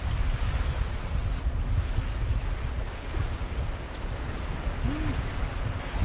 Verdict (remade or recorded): recorded